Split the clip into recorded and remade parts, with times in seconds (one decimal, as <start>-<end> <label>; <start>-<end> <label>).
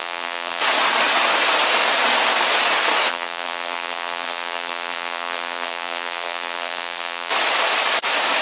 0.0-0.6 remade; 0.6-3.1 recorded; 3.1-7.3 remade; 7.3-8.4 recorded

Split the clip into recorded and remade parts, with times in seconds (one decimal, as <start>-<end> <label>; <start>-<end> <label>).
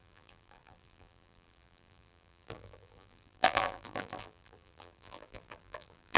0.0-6.2 remade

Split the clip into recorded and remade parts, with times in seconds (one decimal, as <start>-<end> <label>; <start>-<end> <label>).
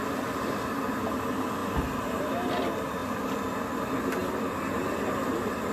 0.0-4.2 recorded; 4.2-4.8 remade; 4.8-5.7 recorded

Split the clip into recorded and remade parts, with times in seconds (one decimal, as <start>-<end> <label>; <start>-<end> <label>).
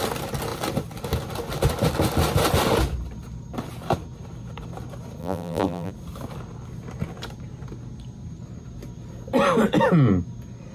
0.0-5.2 recorded; 5.2-5.9 remade; 5.9-10.7 recorded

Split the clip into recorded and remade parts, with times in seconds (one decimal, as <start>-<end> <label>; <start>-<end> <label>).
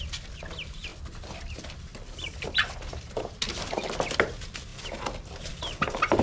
0.0-1.9 recorded; 1.9-4.0 remade; 4.0-6.2 recorded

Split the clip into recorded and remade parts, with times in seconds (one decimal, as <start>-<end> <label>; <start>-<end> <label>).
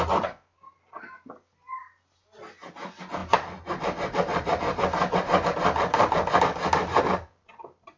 0.0-3.2 recorded; 3.2-6.4 remade; 6.4-6.9 recorded; 6.9-8.0 remade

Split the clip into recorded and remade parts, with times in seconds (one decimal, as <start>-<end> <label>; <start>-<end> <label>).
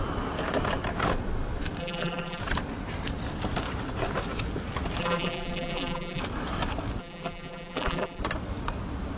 0.0-1.8 recorded; 1.8-2.4 remade; 2.4-5.0 recorded; 5.0-6.2 remade; 6.2-7.0 recorded; 7.0-8.2 remade; 8.2-9.2 recorded